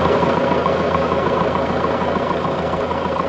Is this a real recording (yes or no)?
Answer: no